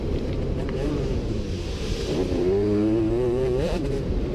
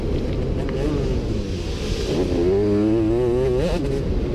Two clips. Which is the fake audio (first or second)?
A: first